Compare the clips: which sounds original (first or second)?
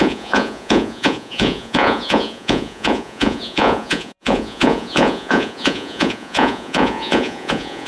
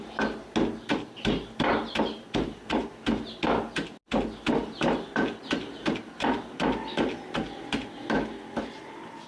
second